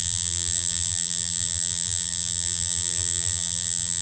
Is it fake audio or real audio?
fake